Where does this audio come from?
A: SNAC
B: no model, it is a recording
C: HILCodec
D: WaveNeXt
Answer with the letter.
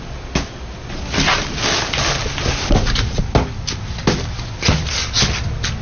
B